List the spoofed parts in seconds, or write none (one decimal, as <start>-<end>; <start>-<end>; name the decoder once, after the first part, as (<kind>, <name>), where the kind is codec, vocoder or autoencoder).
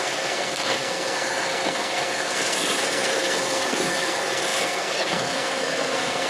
0.0-6.3 (codec, SNAC)